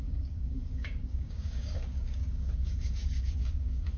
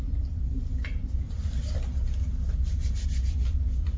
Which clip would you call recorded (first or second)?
second